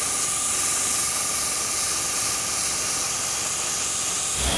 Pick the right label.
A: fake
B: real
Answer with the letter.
B